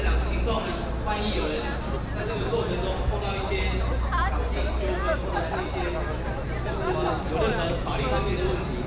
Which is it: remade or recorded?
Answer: recorded